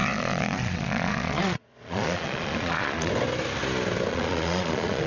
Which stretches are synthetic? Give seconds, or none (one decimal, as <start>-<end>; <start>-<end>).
0.0-3.1; 4.1-5.1